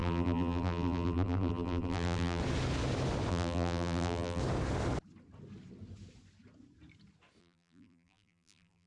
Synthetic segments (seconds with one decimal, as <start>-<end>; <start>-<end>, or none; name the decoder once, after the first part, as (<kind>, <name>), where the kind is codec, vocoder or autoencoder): 0.0-2.4 (vocoder, BigVGAN v2); 3.3-4.4; 7.4-8.9